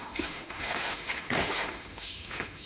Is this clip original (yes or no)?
no